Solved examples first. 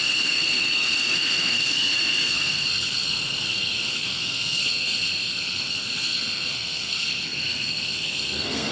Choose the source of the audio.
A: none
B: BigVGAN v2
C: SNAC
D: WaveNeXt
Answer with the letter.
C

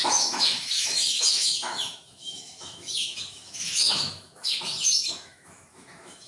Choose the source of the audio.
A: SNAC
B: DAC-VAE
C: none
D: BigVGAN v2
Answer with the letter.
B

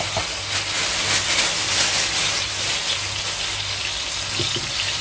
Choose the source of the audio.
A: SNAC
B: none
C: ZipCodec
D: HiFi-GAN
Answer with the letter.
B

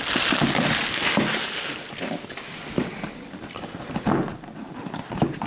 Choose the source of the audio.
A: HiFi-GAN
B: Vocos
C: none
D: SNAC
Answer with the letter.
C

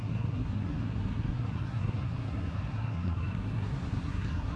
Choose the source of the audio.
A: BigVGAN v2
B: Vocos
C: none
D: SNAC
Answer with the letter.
D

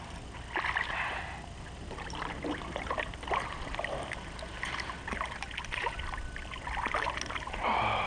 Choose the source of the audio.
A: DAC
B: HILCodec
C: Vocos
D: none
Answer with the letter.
D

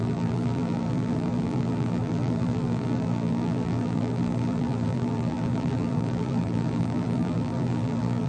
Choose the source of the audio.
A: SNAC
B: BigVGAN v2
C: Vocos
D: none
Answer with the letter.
B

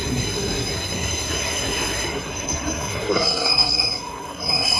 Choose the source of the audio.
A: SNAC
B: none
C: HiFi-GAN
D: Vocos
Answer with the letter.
A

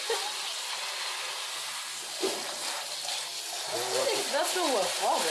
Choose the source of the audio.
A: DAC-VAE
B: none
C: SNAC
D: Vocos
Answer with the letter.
B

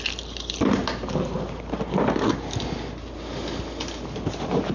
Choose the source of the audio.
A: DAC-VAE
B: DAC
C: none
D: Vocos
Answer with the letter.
C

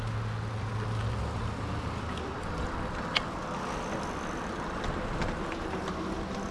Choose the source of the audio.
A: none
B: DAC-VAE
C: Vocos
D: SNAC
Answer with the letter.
A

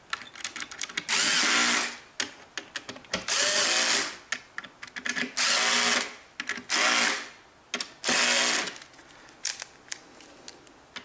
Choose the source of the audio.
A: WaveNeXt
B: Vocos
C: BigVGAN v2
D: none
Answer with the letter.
D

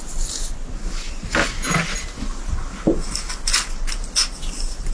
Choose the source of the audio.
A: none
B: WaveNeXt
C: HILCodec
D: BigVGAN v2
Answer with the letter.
A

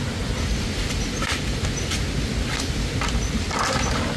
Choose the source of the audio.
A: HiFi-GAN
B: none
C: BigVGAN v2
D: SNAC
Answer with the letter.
B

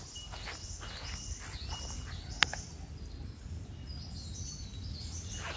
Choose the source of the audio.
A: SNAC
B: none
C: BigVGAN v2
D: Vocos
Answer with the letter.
B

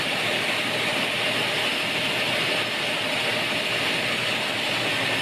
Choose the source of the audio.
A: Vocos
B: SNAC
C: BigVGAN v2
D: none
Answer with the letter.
D